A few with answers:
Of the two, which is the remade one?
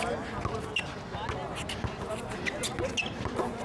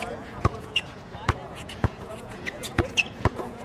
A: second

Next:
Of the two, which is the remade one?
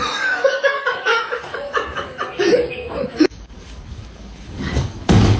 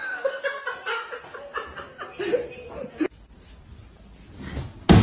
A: first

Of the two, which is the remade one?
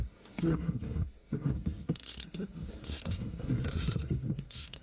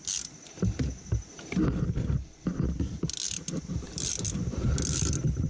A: first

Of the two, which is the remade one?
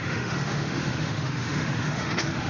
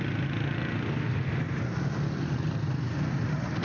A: first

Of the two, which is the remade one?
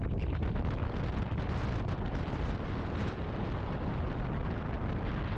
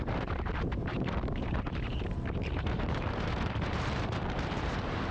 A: second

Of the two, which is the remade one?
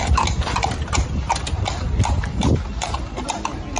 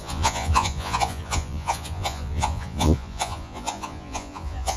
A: second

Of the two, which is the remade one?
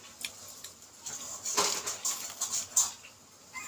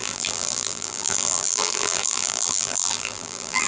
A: second